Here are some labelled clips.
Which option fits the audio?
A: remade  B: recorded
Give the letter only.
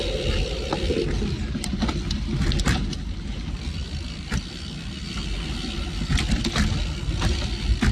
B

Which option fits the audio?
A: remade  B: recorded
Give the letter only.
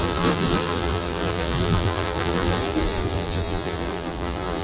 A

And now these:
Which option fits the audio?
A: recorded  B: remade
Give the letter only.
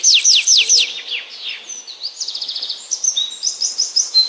A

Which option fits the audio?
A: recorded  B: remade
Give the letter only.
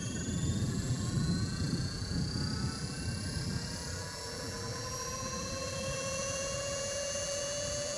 B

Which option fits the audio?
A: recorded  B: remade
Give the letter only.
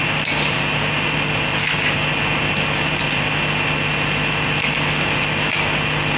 A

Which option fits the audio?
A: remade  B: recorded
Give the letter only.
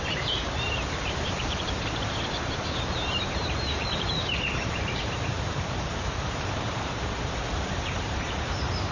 A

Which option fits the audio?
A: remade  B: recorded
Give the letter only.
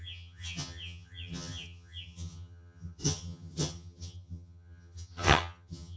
A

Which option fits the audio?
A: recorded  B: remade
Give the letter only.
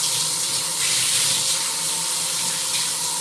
A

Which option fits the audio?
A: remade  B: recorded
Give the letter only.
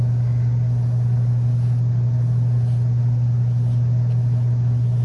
B